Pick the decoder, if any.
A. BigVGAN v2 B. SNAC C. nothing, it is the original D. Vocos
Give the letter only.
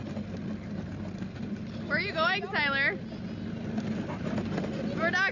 C